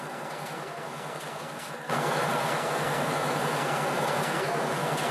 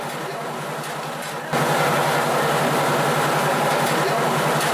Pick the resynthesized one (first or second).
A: first